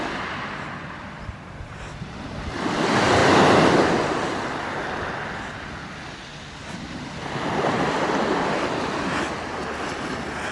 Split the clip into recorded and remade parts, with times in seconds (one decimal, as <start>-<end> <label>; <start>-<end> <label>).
0.0-10.5 recorded

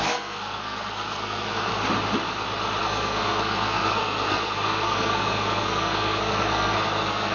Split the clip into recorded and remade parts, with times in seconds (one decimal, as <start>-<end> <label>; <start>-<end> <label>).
0.0-1.7 remade; 1.7-2.8 recorded; 2.8-7.3 remade

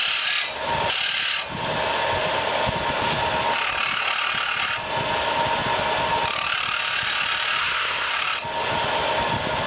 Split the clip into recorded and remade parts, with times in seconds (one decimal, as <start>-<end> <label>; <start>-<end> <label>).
0.0-7.6 recorded; 7.6-8.1 remade; 8.1-9.7 recorded

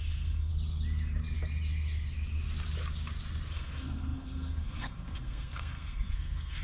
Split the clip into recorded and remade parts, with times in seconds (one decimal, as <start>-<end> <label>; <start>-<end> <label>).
0.0-0.5 remade; 0.5-3.5 recorded; 3.5-6.6 remade

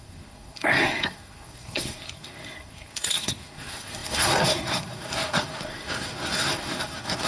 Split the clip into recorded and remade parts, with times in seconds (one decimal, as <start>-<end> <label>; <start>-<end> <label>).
0.0-7.3 remade

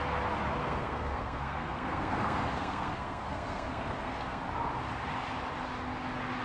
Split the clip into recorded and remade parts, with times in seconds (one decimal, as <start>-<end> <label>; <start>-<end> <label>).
0.0-0.6 recorded; 0.6-4.4 remade; 4.4-6.4 recorded

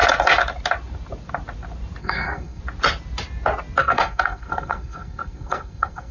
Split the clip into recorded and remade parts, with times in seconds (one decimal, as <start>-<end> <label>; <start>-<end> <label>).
0.0-2.0 recorded; 2.0-2.6 remade; 2.6-3.8 recorded; 3.8-6.1 remade